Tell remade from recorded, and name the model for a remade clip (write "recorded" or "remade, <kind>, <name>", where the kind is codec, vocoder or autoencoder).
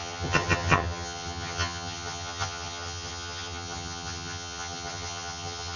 remade, vocoder, HiFi-GAN